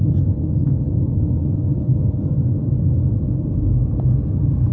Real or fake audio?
real